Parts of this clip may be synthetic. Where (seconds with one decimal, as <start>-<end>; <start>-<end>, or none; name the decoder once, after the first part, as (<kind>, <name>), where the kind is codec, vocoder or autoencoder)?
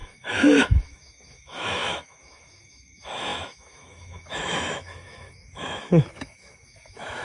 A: 0.0-7.2 (autoencoder, DAC-VAE)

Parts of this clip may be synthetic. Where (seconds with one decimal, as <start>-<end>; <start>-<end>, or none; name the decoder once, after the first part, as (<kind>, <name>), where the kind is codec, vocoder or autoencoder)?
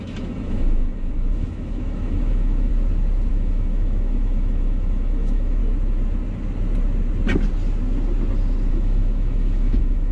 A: 0.0-2.7 (autoencoder, DAC-VAE); 3.3-5.6; 8.7-10.1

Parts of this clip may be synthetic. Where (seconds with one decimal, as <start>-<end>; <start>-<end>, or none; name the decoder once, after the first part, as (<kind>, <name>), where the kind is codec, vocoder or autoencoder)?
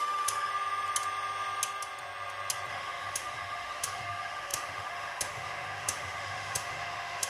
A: 0.0-0.5 (autoencoder, DAC-VAE); 2.7-7.3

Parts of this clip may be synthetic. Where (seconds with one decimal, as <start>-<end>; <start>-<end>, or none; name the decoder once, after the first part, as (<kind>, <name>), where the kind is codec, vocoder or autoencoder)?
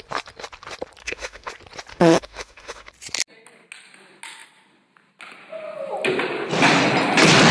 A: 1.0-1.5 (autoencoder, DAC-VAE); 1.9-2.9